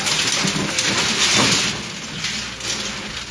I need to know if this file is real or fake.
real